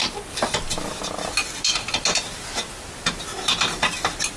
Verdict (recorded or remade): recorded